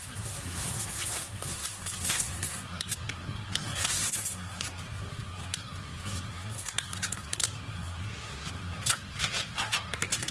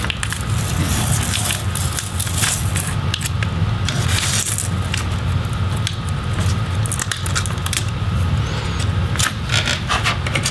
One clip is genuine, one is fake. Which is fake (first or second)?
first